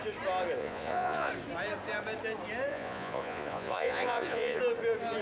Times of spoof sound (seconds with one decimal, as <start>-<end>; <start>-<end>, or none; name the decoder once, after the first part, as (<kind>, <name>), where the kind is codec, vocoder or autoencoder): 0.6-1.3 (vocoder, Vocos); 2.7-4.6